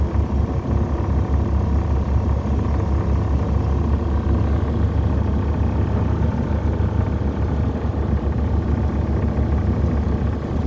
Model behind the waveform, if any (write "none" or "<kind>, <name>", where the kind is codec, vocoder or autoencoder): none